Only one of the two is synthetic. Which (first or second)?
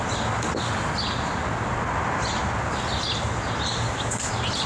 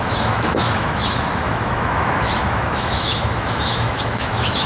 second